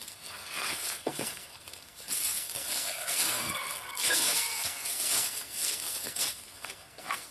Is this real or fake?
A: fake